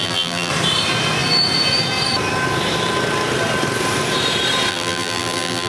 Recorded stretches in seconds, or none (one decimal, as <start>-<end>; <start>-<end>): 0.5-4.7